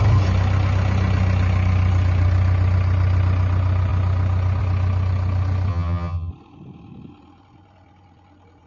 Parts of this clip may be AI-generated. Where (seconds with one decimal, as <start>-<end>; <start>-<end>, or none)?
5.7-6.3